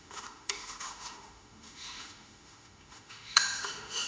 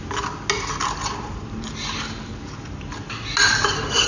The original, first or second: second